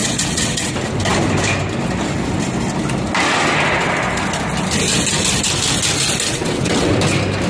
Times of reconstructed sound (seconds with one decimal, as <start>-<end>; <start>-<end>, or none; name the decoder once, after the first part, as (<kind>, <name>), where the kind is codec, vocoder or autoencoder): 0.0-0.7 (vocoder, WaveNeXt); 6.3-6.9